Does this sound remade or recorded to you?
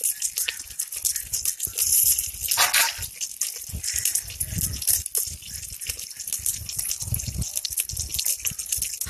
recorded